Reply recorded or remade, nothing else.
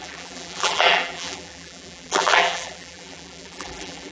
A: remade